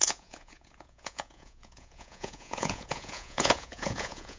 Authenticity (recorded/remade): remade